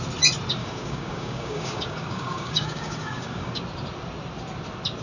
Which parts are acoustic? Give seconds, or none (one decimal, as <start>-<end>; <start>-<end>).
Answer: 0.0-0.6; 3.6-5.0